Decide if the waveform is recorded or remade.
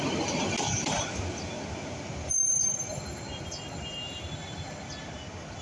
recorded